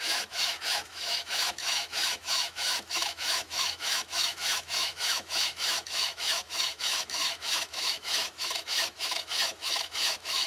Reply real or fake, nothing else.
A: fake